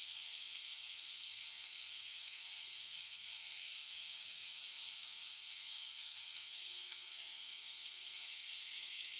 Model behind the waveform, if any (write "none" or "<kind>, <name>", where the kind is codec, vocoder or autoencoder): codec, SNAC